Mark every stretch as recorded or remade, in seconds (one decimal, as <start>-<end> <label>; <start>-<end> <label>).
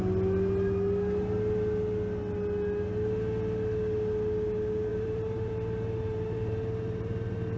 0.0-4.9 recorded; 4.9-7.6 remade